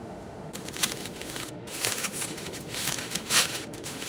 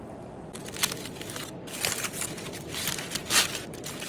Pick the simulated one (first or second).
first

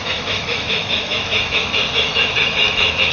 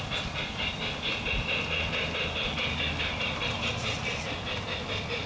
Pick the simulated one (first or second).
first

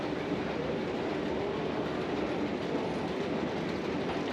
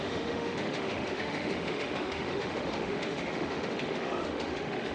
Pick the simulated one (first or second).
second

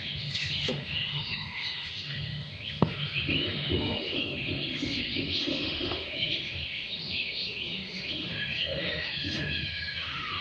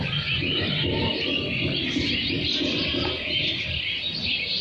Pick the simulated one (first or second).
first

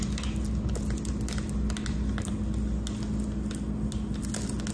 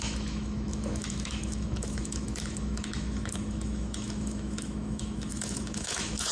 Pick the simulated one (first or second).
second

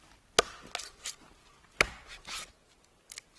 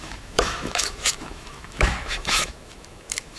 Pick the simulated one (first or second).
second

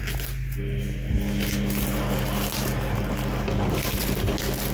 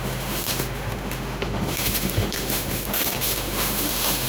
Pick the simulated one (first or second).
second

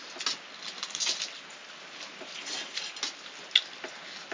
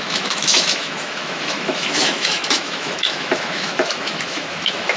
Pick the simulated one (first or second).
second